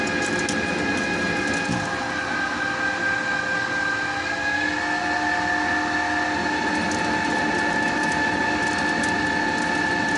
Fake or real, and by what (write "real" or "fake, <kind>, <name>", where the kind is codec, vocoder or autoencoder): real